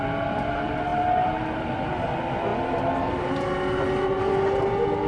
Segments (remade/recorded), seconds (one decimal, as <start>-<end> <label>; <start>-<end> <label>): 0.0-5.1 recorded